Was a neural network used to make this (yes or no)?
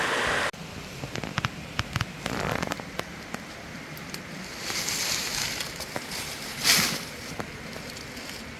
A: no